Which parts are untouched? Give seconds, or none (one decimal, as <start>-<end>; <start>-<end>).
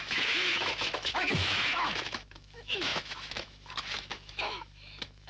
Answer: none